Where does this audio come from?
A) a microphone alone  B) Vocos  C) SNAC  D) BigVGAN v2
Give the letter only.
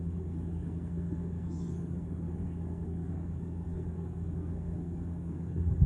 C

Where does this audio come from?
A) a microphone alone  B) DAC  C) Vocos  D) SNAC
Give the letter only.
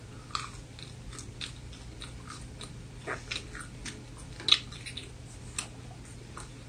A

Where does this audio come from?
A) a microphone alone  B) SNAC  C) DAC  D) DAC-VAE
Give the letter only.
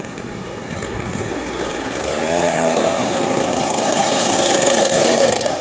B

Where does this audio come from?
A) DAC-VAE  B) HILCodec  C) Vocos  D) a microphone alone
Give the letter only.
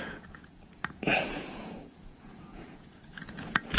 C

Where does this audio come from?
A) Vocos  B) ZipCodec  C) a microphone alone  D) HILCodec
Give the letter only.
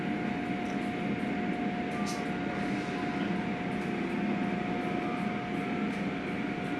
C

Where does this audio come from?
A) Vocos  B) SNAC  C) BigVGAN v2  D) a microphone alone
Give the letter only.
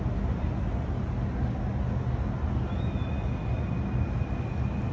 D